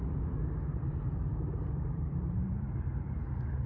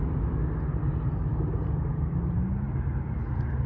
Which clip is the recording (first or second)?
second